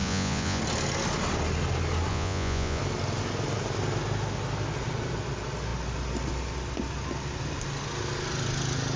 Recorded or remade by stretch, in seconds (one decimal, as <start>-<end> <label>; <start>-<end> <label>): 0.0-0.6 remade; 0.6-2.1 recorded; 2.1-2.8 remade; 2.8-9.0 recorded